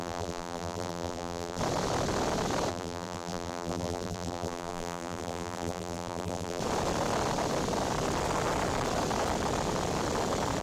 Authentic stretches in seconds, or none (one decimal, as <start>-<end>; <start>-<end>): 1.6-2.7; 6.6-10.6